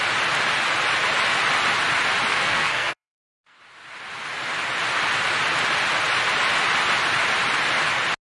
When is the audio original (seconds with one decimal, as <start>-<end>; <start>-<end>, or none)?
0.0-2.3; 3.6-8.2